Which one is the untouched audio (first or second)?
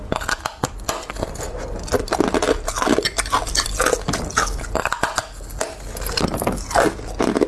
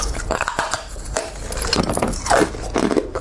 first